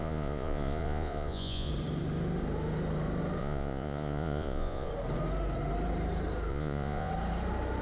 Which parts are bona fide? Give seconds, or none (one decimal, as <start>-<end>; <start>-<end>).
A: 1.7-3.4; 4.9-6.5; 7.1-7.8